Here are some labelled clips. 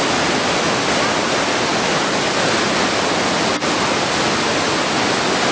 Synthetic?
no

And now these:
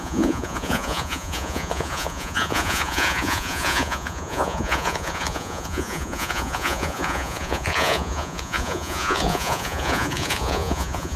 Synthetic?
yes